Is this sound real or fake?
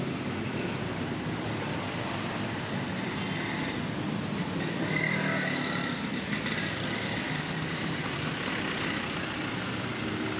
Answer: real